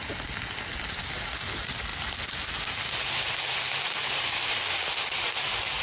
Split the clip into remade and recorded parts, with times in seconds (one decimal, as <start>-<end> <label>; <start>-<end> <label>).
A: 0.0-5.8 recorded

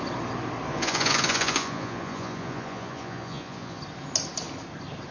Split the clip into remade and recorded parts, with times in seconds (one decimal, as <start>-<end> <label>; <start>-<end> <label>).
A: 0.0-0.7 recorded; 0.7-3.8 remade; 3.8-5.1 recorded